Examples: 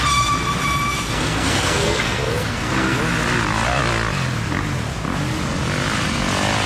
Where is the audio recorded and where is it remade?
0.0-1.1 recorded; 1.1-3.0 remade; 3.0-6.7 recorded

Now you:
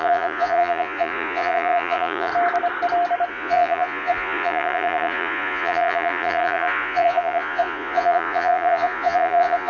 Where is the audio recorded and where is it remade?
0.0-2.3 remade; 2.3-3.3 recorded; 3.3-9.7 remade

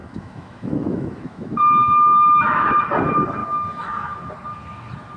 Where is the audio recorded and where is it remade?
0.0-2.8 remade; 2.8-3.4 recorded; 3.4-4.3 remade; 4.3-5.2 recorded

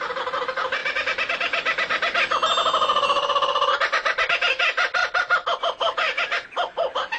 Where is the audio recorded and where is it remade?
0.0-7.2 recorded

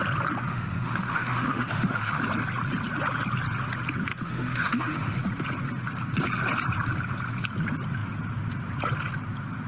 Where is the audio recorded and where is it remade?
0.0-0.5 recorded; 0.5-2.2 remade; 2.2-4.1 recorded; 4.1-5.2 remade; 5.2-9.7 recorded

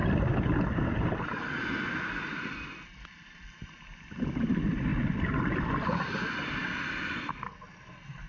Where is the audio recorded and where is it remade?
0.0-8.3 recorded

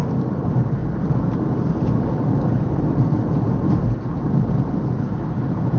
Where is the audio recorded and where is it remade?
0.0-0.8 recorded; 0.8-4.3 remade; 4.3-5.8 recorded

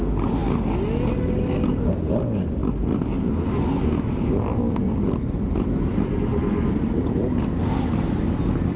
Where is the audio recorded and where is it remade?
0.0-8.8 recorded